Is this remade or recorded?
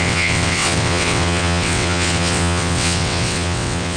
remade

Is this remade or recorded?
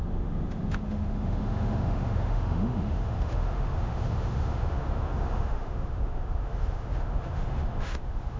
remade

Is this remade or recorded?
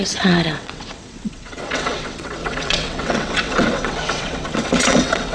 remade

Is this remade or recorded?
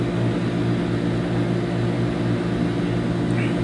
recorded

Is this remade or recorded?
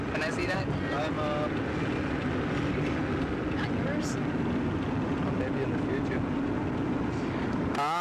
recorded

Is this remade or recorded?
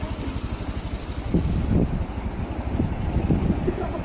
recorded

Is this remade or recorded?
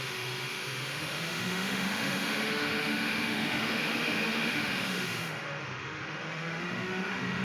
remade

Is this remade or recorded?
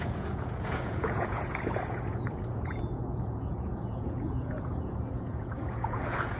remade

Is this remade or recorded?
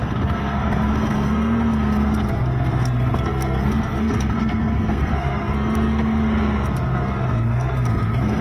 remade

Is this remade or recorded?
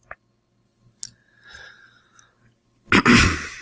recorded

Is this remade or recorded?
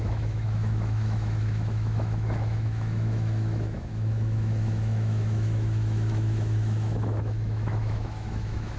remade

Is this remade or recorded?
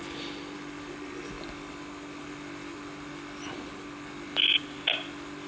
recorded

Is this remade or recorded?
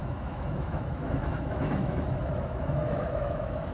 remade